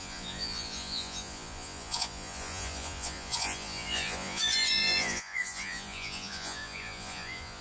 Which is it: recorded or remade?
remade